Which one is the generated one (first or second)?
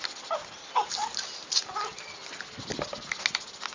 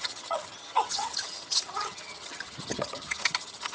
second